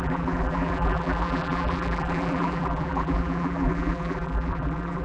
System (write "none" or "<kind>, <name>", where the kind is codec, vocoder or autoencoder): vocoder, BigVGAN v2